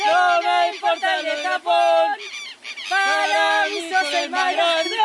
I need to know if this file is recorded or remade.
recorded